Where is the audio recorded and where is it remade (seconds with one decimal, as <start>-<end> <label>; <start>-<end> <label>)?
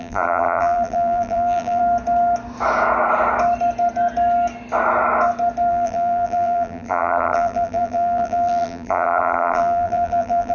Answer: 0.0-1.8 remade; 1.8-5.7 recorded; 5.7-10.5 remade